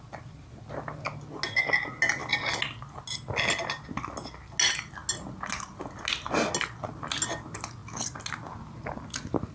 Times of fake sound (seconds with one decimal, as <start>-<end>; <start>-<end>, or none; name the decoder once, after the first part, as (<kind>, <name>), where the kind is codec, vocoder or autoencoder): none